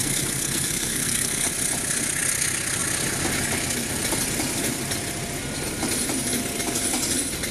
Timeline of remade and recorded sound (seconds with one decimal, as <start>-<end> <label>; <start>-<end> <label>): 0.0-1.5 remade; 1.5-7.5 recorded